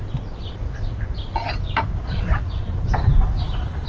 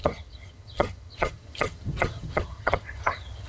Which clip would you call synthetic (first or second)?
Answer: second